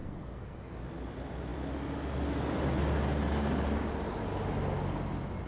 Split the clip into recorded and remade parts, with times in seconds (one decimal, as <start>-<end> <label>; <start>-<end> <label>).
0.0-0.8 remade; 0.8-5.5 recorded